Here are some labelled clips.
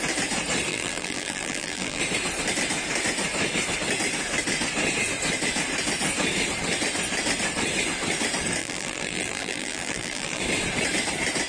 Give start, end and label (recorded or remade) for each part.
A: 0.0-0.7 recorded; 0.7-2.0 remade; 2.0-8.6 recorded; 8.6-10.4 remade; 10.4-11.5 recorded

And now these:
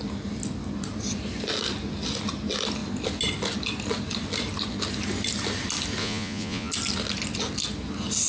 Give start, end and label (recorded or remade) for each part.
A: 0.0-6.0 recorded; 6.0-6.7 remade; 6.7-8.3 recorded

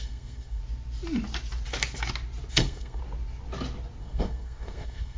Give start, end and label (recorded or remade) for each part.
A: 0.0-0.6 remade; 0.6-2.5 recorded; 2.5-3.0 remade; 3.0-4.0 recorded; 4.0-5.2 remade

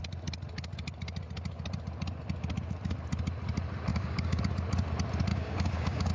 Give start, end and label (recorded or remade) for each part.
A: 0.0-3.9 recorded; 3.9-4.4 remade; 4.4-5.3 recorded; 5.3-6.1 remade

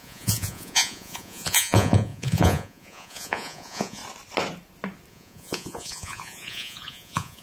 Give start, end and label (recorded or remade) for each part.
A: 0.0-4.0 remade; 4.0-5.1 recorded; 5.1-7.4 remade